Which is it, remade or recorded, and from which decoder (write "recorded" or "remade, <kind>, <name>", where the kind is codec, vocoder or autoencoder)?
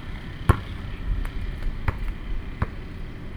recorded